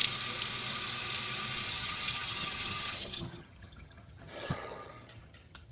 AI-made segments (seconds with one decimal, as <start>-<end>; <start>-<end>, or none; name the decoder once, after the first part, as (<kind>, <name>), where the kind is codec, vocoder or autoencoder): 1.7-5.7 (vocoder, HiFi-GAN)